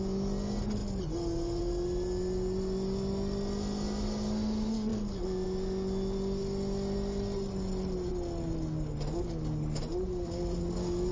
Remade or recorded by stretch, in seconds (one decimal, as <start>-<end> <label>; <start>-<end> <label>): 0.0-11.1 recorded